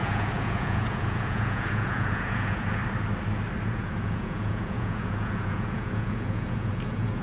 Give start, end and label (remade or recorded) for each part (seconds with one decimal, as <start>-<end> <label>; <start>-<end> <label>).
0.0-2.8 remade; 2.8-3.7 recorded; 3.7-7.2 remade